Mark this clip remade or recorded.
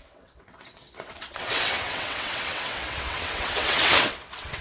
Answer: remade